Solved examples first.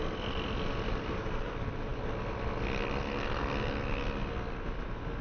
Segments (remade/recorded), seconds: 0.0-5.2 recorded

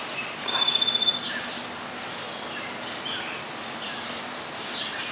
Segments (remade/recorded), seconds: 0.0-5.1 recorded

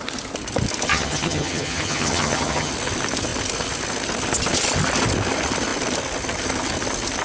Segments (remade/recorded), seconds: 0.0-0.9 recorded; 0.9-2.7 remade; 2.7-7.2 recorded